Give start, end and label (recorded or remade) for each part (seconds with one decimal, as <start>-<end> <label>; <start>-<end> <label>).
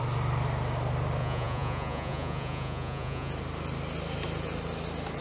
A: 0.0-1.2 recorded; 1.2-3.3 remade; 3.3-5.2 recorded